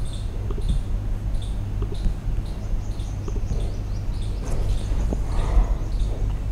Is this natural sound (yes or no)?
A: yes